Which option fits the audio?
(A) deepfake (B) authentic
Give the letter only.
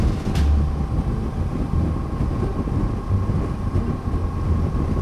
B